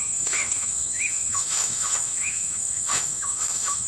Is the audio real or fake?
fake